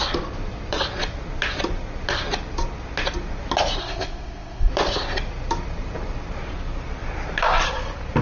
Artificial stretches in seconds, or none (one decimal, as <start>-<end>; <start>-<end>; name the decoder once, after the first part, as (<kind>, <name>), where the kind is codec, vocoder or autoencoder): 3.8-4.7 (codec, ZipCodec)